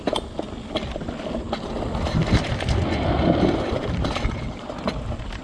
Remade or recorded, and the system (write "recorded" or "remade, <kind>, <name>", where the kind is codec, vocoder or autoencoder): recorded